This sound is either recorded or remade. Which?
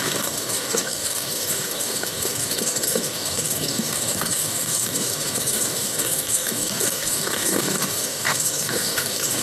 remade